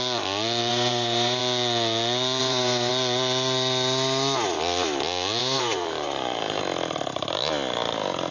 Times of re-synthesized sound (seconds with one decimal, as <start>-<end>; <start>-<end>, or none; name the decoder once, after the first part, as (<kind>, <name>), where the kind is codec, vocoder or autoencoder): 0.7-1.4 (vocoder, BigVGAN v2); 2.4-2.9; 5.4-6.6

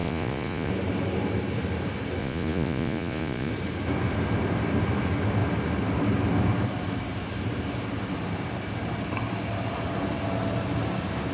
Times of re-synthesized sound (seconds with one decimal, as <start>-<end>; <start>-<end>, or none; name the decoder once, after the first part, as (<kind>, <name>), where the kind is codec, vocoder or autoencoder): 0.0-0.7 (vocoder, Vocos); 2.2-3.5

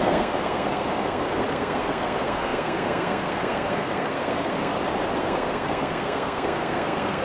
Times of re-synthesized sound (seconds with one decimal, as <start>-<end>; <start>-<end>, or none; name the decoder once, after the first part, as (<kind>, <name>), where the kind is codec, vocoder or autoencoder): 0.0-4.7 (codec, SNAC); 5.2-7.2

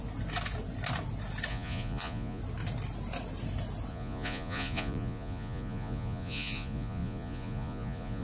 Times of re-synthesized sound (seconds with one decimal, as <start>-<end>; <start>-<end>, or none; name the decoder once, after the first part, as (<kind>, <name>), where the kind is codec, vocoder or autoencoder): 1.5-2.4 (vocoder, Vocos); 3.9-8.2

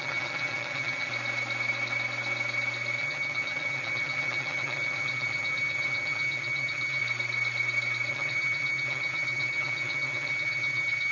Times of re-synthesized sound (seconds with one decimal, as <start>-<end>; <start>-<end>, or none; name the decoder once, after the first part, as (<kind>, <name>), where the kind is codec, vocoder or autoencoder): 0.0-1.1 (vocoder, HiFi-GAN); 3.0-7.0; 8.1-11.1

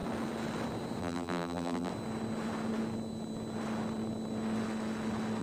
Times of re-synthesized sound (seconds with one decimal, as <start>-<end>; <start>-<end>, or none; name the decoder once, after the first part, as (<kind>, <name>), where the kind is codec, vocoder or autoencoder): 1.0-1.9 (vocoder, BigVGAN v2)